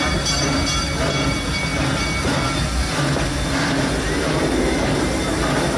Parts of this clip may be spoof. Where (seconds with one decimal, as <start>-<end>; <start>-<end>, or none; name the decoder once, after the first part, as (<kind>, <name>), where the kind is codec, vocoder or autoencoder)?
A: none